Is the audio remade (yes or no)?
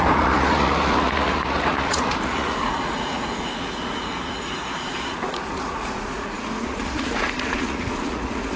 yes